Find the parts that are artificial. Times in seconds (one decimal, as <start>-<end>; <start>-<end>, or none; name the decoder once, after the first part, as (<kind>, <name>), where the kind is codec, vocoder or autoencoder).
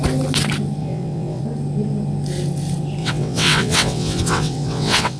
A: 0.8-1.4 (vocoder, WaveNeXt); 3.0-5.2